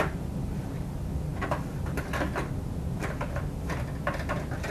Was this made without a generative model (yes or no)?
yes